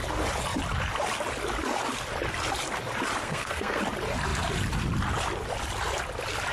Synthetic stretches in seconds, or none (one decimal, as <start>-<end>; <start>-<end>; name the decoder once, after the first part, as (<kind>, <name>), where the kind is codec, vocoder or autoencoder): 3.2-3.8 (codec, SNAC)